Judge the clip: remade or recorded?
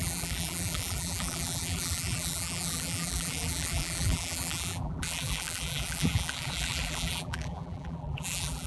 remade